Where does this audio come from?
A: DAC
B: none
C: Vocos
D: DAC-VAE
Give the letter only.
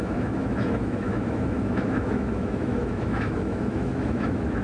D